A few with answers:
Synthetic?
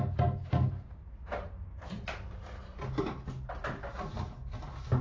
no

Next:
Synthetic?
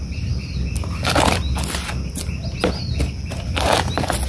no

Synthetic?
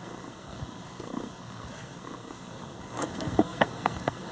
yes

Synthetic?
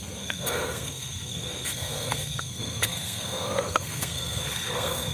yes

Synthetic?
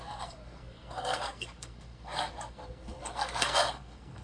yes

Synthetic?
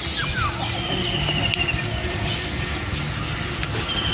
no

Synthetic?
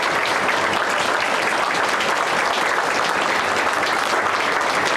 no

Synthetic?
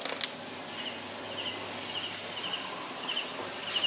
no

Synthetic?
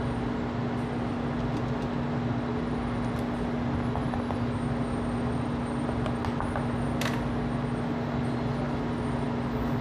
no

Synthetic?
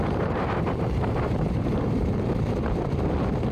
yes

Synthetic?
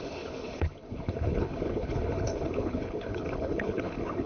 yes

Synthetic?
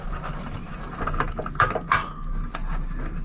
no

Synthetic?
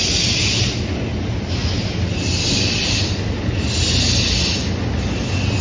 no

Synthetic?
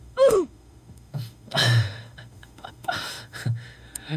yes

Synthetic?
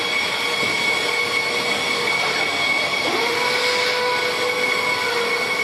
no